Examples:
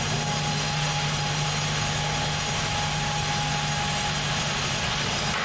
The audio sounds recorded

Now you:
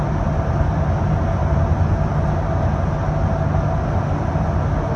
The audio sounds recorded